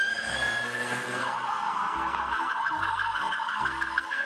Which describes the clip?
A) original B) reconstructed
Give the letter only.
B